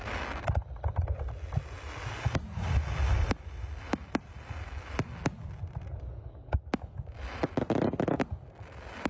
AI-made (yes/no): no